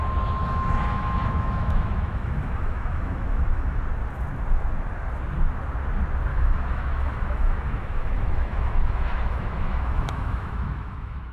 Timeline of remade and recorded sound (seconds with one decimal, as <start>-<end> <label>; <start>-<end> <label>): 0.0-0.4 recorded; 0.4-3.8 remade; 3.8-6.3 recorded; 6.3-11.3 remade